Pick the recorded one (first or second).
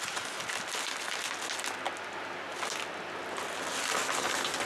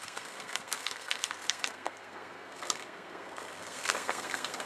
first